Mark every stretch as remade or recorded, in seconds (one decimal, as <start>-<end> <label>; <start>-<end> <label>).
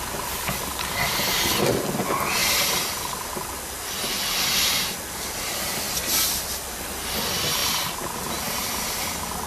0.0-9.5 recorded